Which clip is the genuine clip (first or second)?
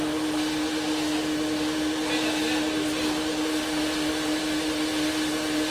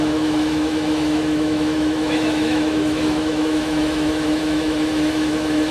first